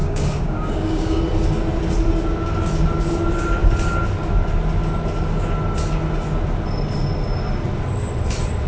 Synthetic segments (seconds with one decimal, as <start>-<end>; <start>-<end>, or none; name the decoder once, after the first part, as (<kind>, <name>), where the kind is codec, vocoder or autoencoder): 0.0-1.2 (codec, DAC)